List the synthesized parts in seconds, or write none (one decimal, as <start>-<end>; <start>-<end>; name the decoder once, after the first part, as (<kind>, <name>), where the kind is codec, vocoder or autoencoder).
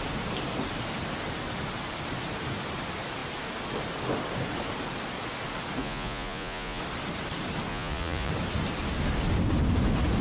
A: 5.8-6.8 (vocoder, Vocos); 7.7-8.3